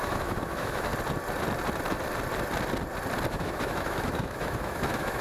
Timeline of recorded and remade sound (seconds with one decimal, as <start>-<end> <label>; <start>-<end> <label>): 0.0-0.9 remade; 0.9-3.3 recorded; 3.3-5.2 remade